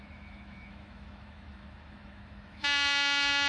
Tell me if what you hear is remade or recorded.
remade